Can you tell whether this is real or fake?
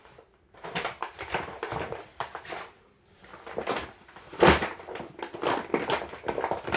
real